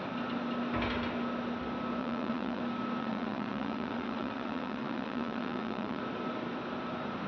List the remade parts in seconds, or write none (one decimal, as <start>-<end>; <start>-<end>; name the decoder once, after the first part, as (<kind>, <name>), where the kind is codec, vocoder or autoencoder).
2.0-2.6 (vocoder, Vocos); 3.0-6.0